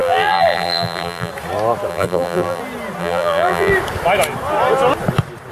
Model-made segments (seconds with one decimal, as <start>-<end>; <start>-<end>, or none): 0.0-1.3; 1.9-2.6; 3.0-3.7